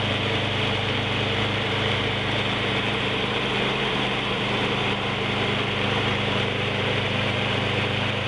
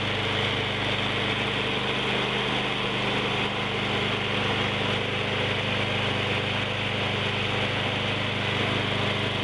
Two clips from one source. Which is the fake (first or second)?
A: first